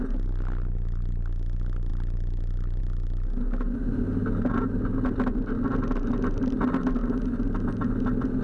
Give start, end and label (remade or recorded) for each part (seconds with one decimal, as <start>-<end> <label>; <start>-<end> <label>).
0.0-8.4 recorded

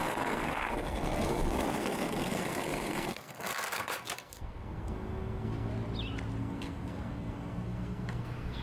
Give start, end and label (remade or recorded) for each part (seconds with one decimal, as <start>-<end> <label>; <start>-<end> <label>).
0.0-5.7 remade; 5.7-6.4 recorded; 6.4-8.6 remade

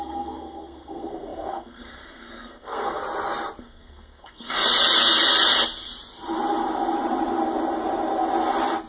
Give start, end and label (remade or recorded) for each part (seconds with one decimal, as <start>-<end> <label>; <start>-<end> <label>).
0.0-3.0 remade; 3.0-3.6 recorded; 3.6-4.6 remade; 4.6-8.9 recorded

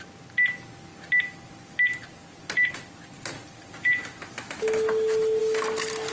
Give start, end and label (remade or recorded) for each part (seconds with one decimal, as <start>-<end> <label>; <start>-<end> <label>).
0.0-6.1 recorded